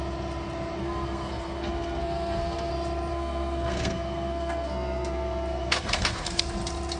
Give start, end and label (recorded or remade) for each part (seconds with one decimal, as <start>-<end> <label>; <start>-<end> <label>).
0.0-0.8 recorded; 0.8-2.7 remade; 2.7-3.1 recorded; 3.1-6.4 remade; 6.4-7.0 recorded

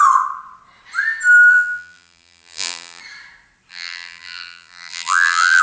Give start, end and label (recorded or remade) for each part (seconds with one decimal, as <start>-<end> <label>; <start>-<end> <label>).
0.0-1.5 recorded; 1.5-3.0 remade; 3.0-3.7 recorded; 3.7-5.6 remade

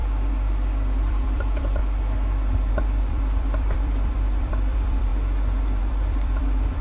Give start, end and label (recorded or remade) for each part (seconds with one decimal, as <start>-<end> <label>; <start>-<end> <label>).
0.0-1.0 recorded; 1.0-1.8 remade; 1.8-2.7 recorded; 2.7-5.1 remade; 5.1-5.8 recorded; 5.8-6.8 remade

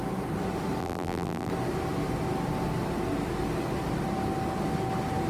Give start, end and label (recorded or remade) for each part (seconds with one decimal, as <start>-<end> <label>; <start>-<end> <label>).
0.0-0.8 recorded; 0.8-1.5 remade; 1.5-5.3 recorded

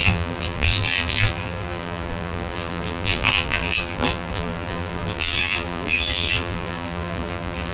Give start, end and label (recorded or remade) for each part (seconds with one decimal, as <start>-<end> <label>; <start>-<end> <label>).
0.0-7.7 remade

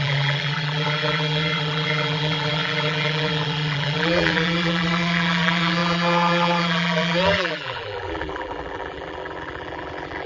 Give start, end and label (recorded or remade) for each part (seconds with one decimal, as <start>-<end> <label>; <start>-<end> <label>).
0.0-10.3 remade

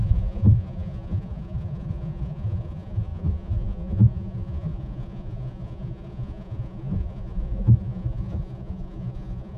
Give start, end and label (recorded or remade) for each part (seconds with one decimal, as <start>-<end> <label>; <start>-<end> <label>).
0.0-9.6 remade